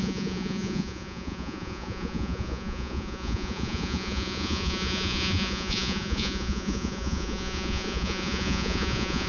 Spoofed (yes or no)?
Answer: yes